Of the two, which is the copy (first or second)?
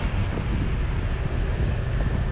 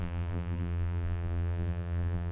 second